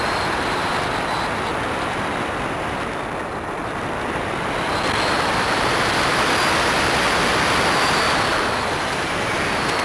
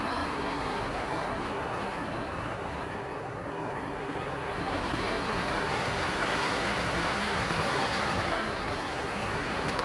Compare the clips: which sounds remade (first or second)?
second